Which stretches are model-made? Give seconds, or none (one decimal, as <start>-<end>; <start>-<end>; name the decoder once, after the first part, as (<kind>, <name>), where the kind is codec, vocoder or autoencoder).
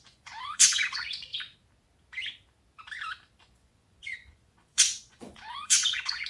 0.0-1.3 (vocoder, Vocos); 3.4-6.3